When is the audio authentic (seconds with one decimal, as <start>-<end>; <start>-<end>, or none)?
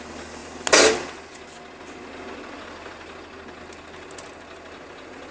0.0-5.3